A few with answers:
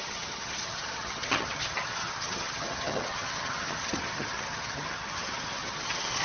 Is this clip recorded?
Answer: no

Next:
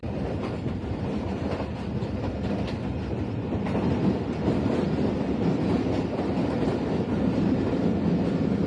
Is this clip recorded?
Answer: yes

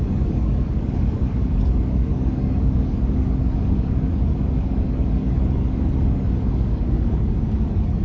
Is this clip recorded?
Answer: no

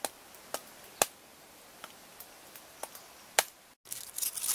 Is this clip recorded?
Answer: yes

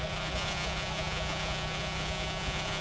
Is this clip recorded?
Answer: no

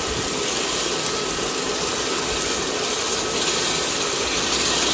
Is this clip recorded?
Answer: yes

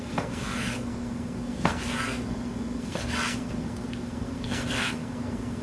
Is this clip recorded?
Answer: no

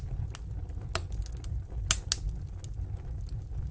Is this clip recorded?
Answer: yes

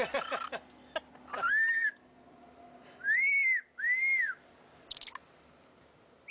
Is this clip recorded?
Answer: yes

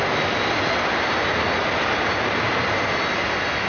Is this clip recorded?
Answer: yes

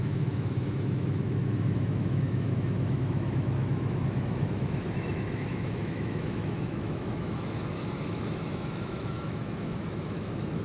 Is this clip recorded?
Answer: no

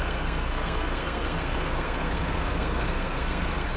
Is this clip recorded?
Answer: no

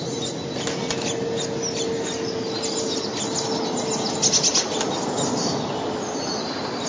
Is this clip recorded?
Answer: yes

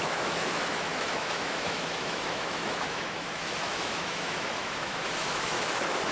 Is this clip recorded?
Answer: no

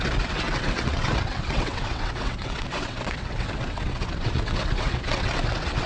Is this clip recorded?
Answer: no